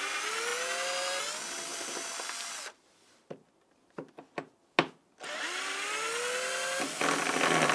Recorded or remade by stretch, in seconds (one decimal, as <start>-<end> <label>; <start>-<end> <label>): 0.0-7.7 recorded